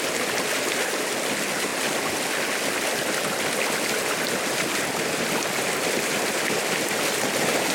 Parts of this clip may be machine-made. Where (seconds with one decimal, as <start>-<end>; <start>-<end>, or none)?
none